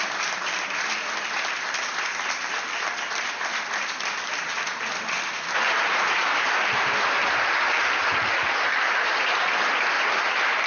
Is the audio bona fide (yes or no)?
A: yes